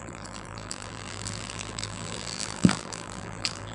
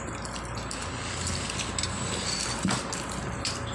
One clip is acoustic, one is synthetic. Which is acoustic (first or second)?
second